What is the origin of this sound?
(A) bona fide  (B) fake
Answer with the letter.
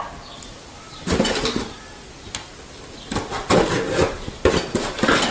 A